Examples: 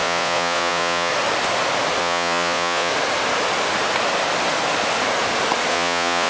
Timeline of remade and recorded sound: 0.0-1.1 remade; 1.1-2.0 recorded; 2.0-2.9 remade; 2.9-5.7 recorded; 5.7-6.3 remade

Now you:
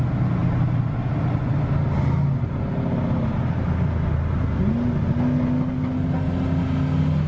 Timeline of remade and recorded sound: 0.0-7.3 recorded

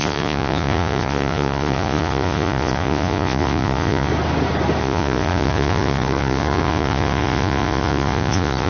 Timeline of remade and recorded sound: 0.0-4.1 remade; 4.1-4.8 recorded; 4.8-8.7 remade

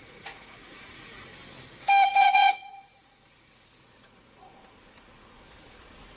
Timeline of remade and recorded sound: 0.0-1.3 remade; 1.3-2.2 recorded; 2.2-6.2 remade

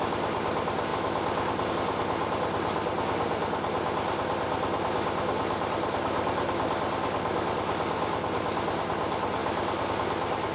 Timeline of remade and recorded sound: 0.0-10.5 recorded

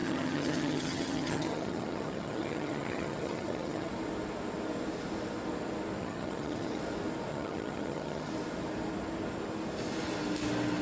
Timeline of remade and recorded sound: 0.0-3.9 remade; 3.9-6.0 recorded; 6.0-6.8 remade; 6.8-7.3 recorded; 7.3-8.3 remade; 8.3-10.8 recorded

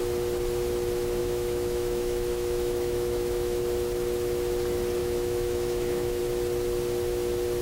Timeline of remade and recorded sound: 0.0-1.2 recorded; 1.2-3.6 remade; 3.6-5.0 recorded; 5.0-6.2 remade; 6.2-7.6 recorded